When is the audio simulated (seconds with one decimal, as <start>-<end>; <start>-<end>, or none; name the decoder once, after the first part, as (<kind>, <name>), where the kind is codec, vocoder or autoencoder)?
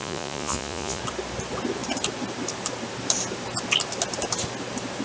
0.0-1.0 (vocoder, Vocos)